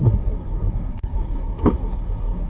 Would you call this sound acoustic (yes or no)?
no